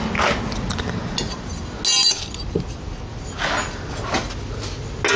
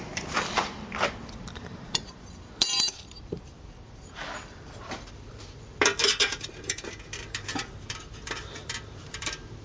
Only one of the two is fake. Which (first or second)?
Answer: second